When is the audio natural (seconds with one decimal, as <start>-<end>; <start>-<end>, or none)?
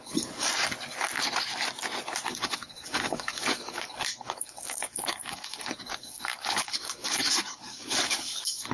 0.5-2.3